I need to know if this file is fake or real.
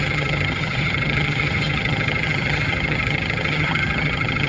fake